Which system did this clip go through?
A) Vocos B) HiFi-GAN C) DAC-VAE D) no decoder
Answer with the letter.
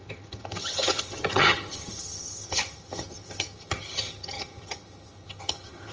B